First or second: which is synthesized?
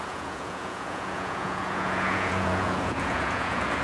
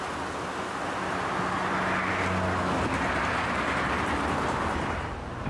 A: first